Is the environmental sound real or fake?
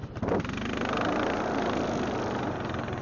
real